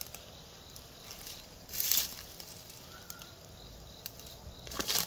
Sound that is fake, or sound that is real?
real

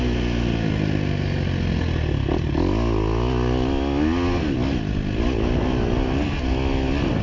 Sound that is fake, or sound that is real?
real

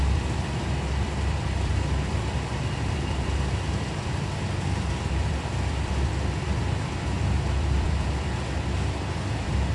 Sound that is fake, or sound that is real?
fake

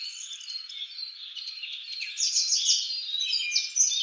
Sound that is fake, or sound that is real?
real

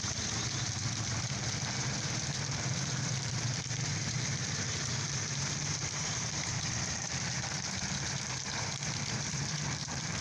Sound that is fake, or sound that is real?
fake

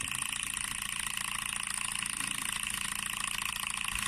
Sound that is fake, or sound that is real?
real